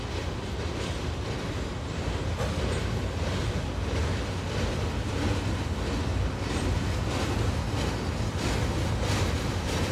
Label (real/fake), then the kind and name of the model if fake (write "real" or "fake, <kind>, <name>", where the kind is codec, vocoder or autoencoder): real